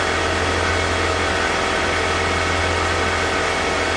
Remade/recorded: recorded